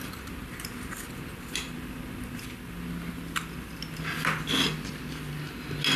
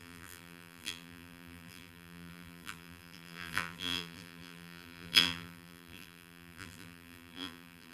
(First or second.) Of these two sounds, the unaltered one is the first